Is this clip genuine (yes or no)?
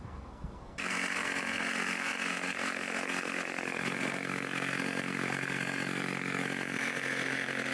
no